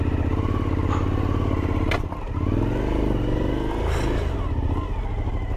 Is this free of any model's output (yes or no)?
yes